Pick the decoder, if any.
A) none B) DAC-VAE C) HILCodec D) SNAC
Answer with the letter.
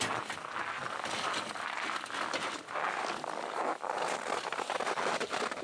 A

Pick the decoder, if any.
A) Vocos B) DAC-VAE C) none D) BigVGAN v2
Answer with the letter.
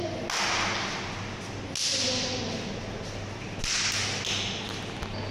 C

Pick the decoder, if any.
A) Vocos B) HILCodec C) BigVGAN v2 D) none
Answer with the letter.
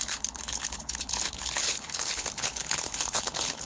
B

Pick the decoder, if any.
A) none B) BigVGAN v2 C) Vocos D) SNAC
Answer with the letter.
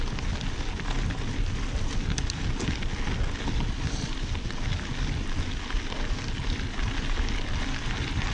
A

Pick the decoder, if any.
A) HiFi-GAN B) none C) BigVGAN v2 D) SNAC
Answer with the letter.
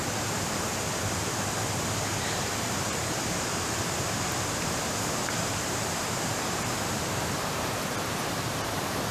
C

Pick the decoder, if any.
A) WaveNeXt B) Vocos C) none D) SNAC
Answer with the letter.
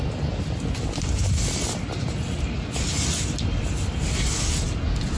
C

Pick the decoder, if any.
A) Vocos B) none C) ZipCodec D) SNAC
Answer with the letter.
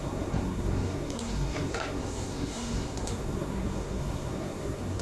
D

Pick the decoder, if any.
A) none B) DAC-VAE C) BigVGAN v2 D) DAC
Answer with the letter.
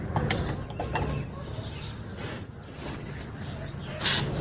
A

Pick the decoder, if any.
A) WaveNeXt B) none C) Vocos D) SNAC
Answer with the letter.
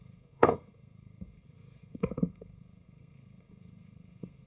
D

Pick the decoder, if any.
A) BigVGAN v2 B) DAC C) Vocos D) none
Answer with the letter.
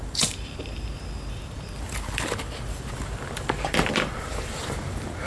A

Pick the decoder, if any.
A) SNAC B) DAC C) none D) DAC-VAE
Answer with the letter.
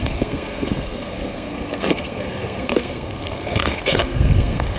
A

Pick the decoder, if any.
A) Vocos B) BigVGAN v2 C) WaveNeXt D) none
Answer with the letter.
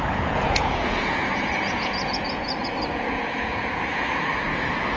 A